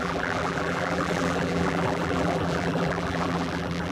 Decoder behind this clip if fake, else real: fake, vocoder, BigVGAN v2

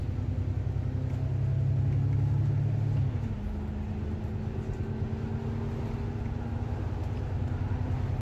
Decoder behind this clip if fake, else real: real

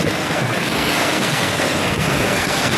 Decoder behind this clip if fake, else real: fake, codec, SNAC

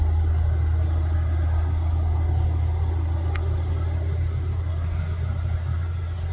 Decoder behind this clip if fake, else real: real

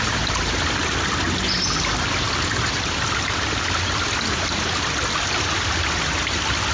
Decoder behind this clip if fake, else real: real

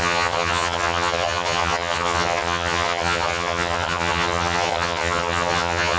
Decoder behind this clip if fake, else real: fake, vocoder, HiFi-GAN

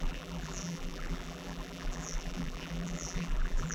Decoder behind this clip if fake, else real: fake, vocoder, BigVGAN v2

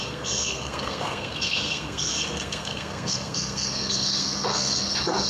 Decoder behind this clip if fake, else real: fake, codec, SNAC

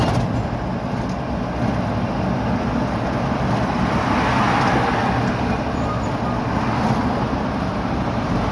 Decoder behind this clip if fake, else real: real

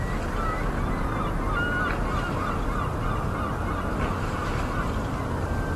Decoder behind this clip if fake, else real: real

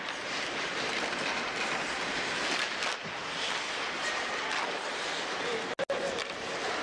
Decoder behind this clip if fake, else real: real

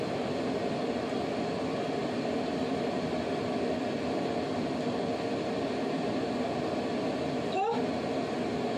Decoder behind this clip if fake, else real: real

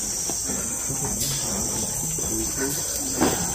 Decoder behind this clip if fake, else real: real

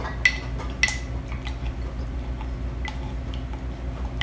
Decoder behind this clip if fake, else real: real